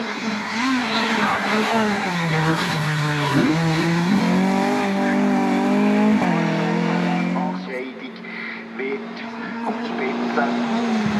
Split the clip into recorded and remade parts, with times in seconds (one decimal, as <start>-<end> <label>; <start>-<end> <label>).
0.0-4.2 remade; 4.2-9.2 recorded; 9.2-9.9 remade; 9.9-11.2 recorded